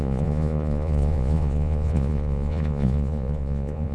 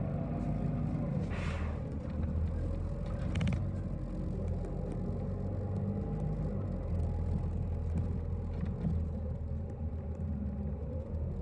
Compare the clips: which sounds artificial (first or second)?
first